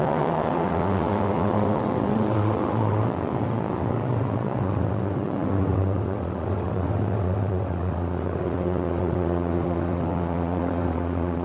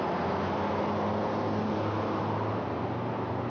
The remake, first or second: first